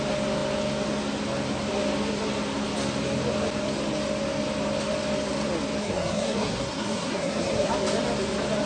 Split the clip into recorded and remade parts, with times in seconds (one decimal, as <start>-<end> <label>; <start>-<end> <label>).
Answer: 0.0-5.8 recorded; 5.8-7.7 remade; 7.7-8.7 recorded